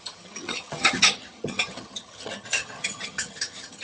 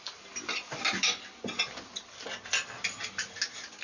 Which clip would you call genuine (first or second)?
second